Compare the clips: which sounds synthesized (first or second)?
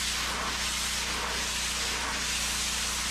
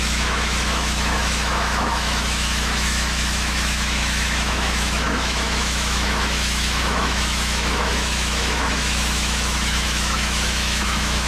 second